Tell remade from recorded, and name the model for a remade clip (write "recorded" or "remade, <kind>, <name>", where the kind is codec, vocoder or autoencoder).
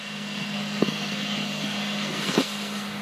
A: remade, codec, SNAC